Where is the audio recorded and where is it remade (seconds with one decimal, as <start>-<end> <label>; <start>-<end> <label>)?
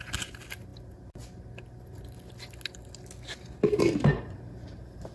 0.0-5.1 recorded